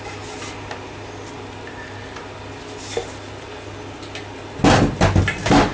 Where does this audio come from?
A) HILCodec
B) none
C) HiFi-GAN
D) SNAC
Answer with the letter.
B